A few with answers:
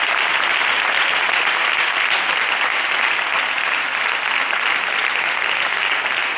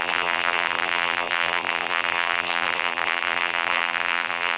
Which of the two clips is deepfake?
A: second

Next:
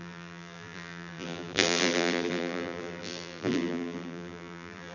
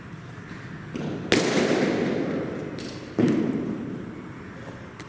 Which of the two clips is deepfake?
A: first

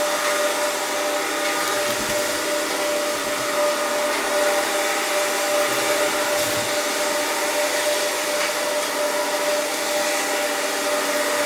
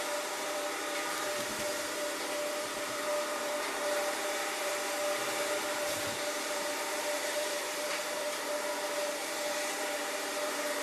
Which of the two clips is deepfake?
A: second